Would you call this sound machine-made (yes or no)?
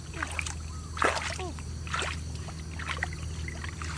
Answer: no